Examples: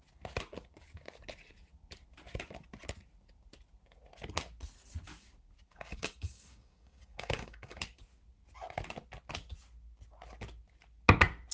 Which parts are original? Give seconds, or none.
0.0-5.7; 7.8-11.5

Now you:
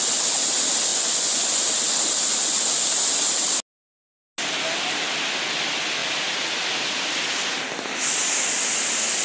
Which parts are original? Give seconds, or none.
0.0-0.9; 1.6-9.2

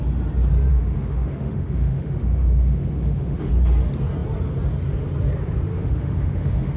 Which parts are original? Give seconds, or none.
0.0-0.7; 3.5-5.7

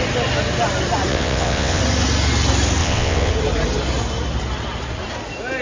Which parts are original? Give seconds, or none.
0.0-1.1; 1.8-2.8; 3.3-5.6

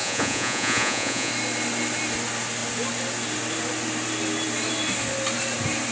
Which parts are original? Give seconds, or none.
1.3-5.9

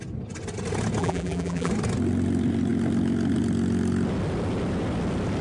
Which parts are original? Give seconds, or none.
0.0-1.0; 1.7-5.4

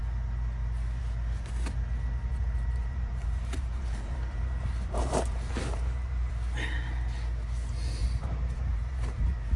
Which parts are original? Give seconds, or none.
0.0-2.3; 6.3-8.0